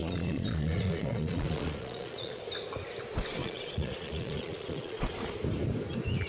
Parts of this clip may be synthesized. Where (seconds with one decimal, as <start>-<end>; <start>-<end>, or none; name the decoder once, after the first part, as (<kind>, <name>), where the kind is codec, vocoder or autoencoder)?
0.0-2.4 (vocoder, Vocos); 3.4-5.0